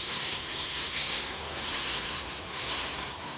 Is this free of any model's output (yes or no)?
no